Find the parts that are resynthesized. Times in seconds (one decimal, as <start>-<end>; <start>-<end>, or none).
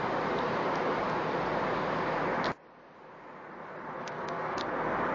4.0-4.6